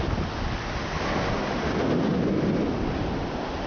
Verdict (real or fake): real